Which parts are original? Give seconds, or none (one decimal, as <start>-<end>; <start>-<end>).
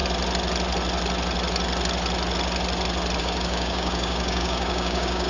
0.0-3.2